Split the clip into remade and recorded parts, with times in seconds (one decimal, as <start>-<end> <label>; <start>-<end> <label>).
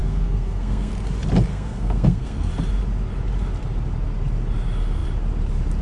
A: 0.0-0.9 remade; 0.9-1.5 recorded; 1.5-2.5 remade; 2.5-5.8 recorded